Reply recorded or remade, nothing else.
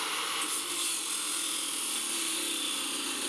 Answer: recorded